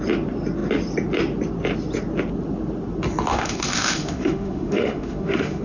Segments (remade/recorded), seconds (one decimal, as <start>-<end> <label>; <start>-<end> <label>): 0.0-3.3 recorded; 3.3-5.6 remade